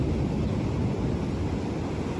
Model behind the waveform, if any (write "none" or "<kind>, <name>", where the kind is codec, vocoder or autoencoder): none